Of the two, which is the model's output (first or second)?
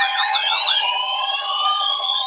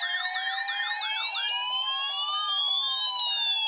first